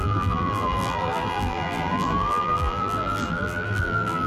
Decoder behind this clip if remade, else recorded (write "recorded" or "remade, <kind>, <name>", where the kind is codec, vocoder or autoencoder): remade, vocoder, BigVGAN v2